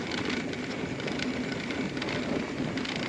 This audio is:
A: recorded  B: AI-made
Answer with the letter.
B